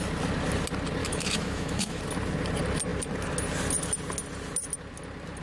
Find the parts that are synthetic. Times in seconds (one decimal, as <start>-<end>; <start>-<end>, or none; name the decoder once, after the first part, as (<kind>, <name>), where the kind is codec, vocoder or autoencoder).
1.0-2.0 (autoencoder, DAC-VAE)